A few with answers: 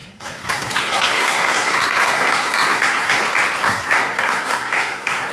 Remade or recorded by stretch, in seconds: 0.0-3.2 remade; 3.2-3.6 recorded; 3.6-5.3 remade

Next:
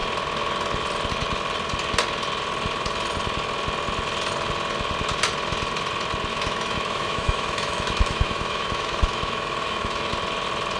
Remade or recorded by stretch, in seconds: 0.0-6.3 recorded; 6.3-10.1 remade; 10.1-10.8 recorded